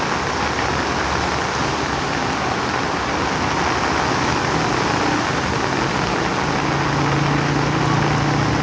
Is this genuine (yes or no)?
yes